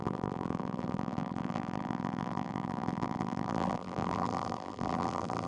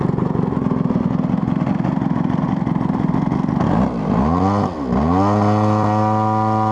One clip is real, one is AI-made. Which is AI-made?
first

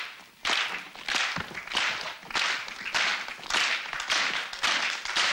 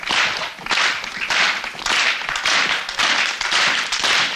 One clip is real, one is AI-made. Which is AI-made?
second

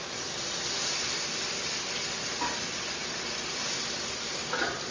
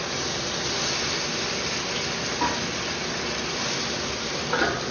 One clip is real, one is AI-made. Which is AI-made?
first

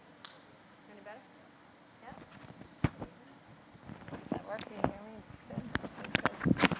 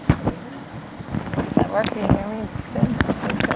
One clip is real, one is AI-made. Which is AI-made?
second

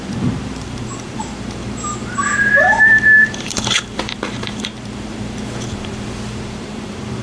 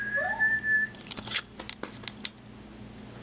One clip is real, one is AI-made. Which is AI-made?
first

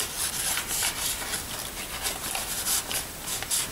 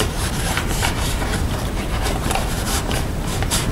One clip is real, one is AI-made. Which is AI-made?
second